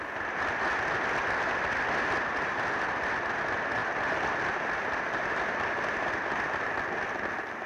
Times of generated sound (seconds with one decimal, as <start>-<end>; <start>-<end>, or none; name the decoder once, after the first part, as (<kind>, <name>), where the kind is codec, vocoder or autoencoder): none